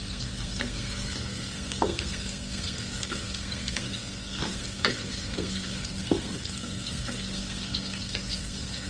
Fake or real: fake